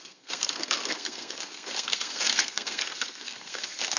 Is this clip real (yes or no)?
no